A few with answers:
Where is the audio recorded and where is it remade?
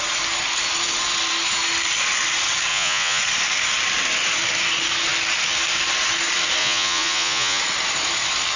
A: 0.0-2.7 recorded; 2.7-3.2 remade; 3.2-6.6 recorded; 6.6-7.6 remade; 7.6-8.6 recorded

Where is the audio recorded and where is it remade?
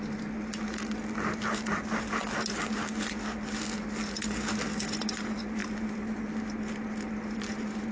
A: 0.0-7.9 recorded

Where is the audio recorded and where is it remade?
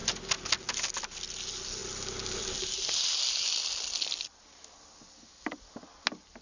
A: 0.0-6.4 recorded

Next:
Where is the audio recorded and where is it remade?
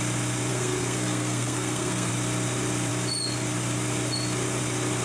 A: 0.0-0.5 recorded; 0.5-2.1 remade; 2.1-5.0 recorded